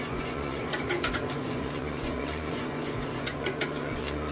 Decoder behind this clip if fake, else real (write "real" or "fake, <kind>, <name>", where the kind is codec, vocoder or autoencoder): fake, vocoder, Vocos